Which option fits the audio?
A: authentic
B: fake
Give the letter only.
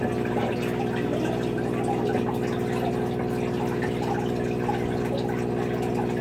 A